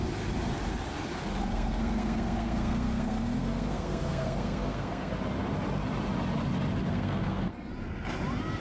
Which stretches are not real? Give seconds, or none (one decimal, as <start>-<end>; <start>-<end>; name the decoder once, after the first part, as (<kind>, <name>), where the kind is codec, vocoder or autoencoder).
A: 1.5-5.1 (codec, SNAC); 6.9-7.7